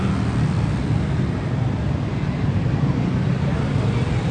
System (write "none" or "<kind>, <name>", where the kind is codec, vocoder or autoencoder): none